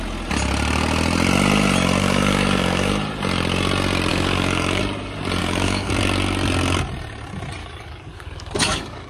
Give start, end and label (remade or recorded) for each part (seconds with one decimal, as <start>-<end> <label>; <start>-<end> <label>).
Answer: 0.0-2.0 recorded; 2.0-2.9 remade; 2.9-4.1 recorded; 4.1-4.8 remade; 4.8-5.4 recorded; 5.4-5.9 remade; 5.9-7.6 recorded; 7.6-9.1 remade